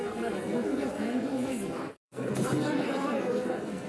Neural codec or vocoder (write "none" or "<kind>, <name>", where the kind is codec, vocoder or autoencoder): codec, SNAC